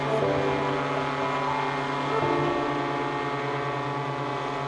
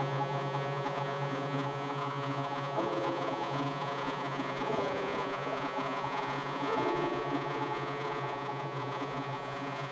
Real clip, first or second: first